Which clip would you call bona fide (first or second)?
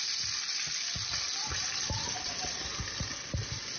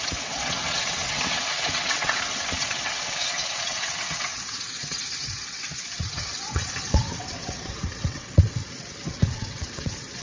first